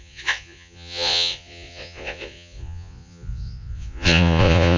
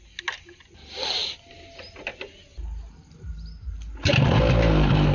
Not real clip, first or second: first